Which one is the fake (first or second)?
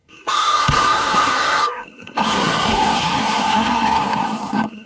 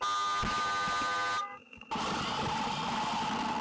first